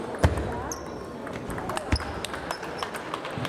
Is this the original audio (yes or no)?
yes